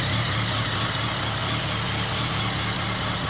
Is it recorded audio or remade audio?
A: recorded